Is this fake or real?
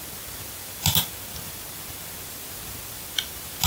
real